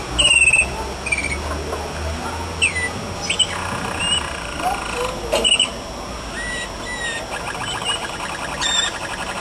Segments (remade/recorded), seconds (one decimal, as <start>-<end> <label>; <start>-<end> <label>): 0.0-9.4 recorded